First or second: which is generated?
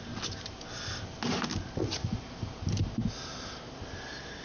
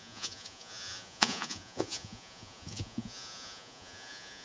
second